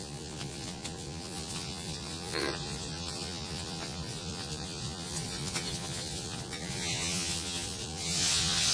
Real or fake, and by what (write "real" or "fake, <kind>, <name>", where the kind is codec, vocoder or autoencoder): fake, vocoder, Vocos